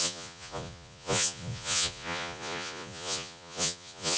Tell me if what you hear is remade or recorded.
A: remade